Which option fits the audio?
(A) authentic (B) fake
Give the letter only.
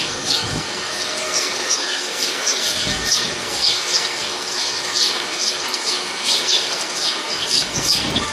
B